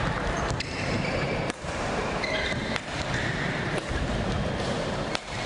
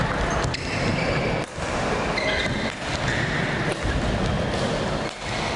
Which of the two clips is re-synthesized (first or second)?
first